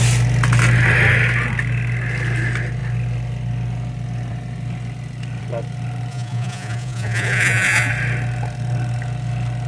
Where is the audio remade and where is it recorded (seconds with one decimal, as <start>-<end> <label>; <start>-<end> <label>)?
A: 0.0-6.1 recorded; 6.1-7.9 remade; 7.9-9.7 recorded